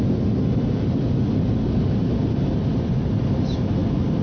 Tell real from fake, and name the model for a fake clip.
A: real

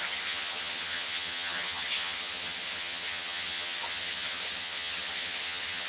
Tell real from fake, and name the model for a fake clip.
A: fake, vocoder, HiFi-GAN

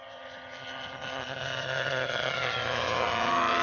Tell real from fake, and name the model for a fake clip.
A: fake, vocoder, HiFi-GAN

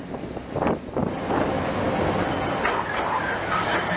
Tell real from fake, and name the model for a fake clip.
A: real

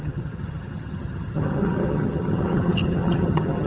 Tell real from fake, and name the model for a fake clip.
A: fake, vocoder, HiFi-GAN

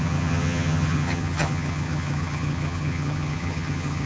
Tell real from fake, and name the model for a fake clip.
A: fake, vocoder, HiFi-GAN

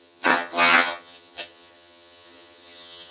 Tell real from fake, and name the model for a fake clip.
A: fake, vocoder, HiFi-GAN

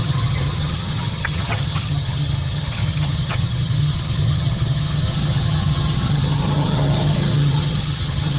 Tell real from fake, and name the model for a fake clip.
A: fake, vocoder, HiFi-GAN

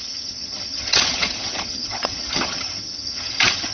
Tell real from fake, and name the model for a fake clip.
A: fake, vocoder, HiFi-GAN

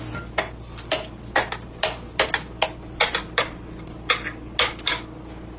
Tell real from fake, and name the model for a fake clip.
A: real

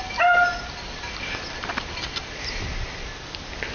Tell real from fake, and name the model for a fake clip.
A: real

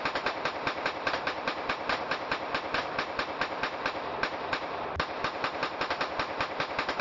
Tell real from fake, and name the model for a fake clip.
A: real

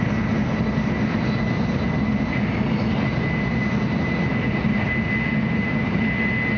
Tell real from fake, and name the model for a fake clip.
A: real